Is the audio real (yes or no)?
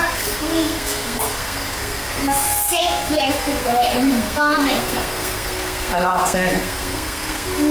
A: no